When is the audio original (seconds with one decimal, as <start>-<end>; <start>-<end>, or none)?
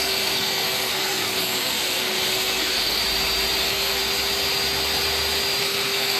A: 3.0-3.6; 4.0-5.6